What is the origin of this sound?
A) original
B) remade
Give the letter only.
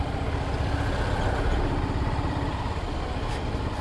A